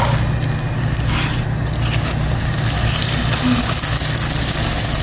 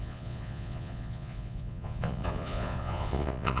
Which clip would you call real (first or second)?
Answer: first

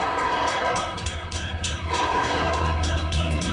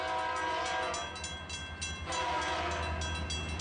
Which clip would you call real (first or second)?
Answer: second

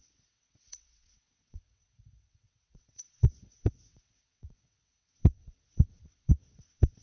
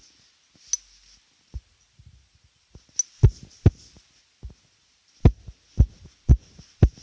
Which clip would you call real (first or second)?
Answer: second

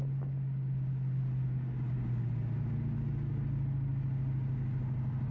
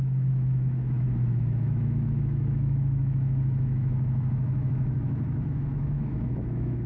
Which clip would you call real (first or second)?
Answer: first